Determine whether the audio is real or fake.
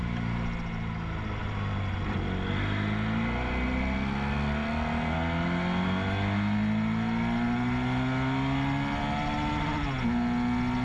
real